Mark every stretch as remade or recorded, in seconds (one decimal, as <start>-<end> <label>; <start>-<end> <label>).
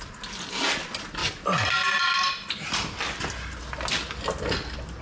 0.0-5.0 recorded